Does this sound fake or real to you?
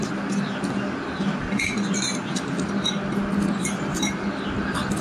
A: real